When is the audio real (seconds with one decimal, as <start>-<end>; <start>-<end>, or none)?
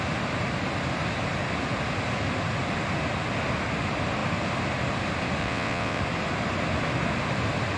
0.0-5.4; 6.0-7.8